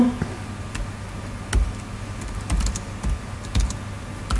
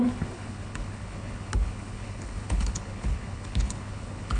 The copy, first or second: second